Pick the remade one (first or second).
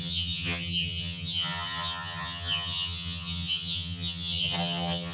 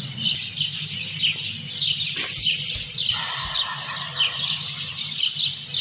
first